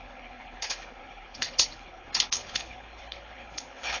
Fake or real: fake